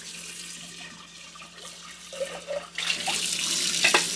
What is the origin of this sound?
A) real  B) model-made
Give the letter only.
A